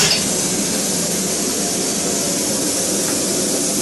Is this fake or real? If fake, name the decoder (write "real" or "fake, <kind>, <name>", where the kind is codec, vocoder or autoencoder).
real